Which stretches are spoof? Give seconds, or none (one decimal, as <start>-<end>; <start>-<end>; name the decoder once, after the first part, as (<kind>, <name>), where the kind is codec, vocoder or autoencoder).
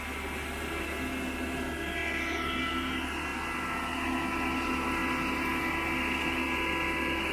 none